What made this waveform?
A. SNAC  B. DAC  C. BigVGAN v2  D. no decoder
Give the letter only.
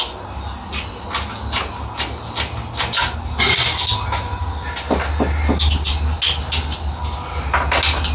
D